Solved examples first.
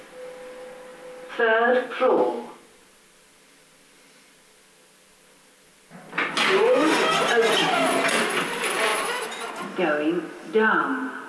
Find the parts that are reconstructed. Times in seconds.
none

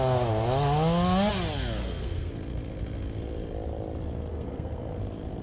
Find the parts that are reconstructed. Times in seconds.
1.8-2.3 (codec, SNAC); 4.3-5.0

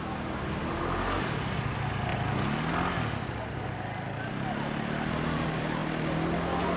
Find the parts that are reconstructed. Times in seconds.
none

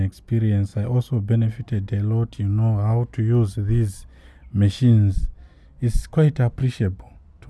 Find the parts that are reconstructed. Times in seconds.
none

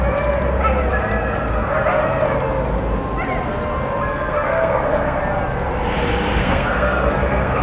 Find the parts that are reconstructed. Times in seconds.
4.1-5.2 (codec, SNAC); 6.4-7.6